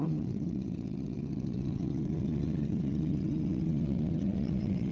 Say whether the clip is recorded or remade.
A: remade